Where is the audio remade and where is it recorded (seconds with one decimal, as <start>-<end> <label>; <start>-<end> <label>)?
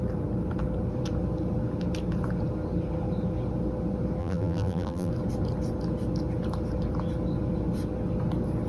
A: 0.0-4.2 recorded; 4.2-5.1 remade; 5.1-8.7 recorded